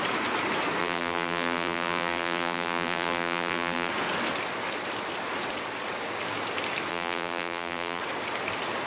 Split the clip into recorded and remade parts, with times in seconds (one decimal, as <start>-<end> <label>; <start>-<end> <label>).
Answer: 0.0-0.8 recorded; 0.8-3.9 remade; 3.9-6.9 recorded; 6.9-8.0 remade; 8.0-8.9 recorded